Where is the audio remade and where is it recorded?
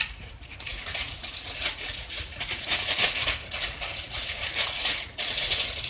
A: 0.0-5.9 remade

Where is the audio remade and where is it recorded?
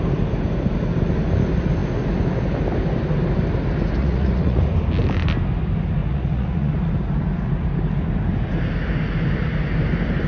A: 0.0-4.0 recorded; 4.0-4.6 remade; 4.6-6.0 recorded; 6.0-6.7 remade; 6.7-10.3 recorded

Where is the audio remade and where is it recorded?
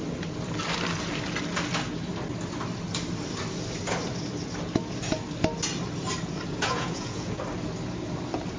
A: 0.0-6.5 recorded; 6.5-7.4 remade; 7.4-8.6 recorded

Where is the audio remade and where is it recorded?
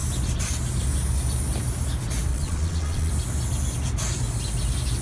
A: 0.0-2.3 recorded; 2.3-3.1 remade; 3.1-5.0 recorded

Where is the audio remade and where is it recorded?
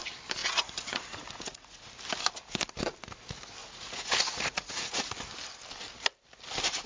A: 0.0-0.4 recorded; 0.4-1.9 remade; 1.9-3.6 recorded; 3.6-5.1 remade; 5.1-6.9 recorded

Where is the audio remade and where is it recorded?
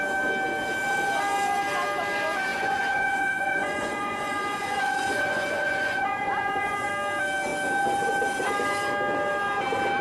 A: 0.0-2.5 recorded; 2.5-6.9 remade; 6.9-10.0 recorded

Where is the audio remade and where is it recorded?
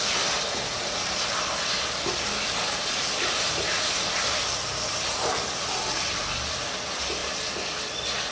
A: 0.0-8.3 recorded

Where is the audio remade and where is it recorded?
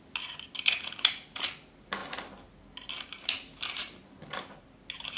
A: 0.0-5.2 recorded